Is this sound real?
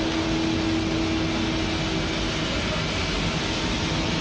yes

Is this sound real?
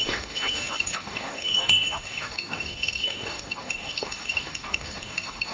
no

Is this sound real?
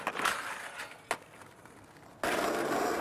yes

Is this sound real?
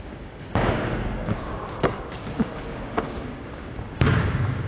no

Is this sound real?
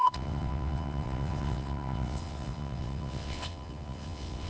no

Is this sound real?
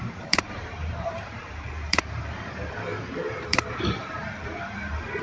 no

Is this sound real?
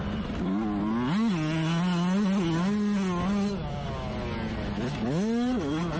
yes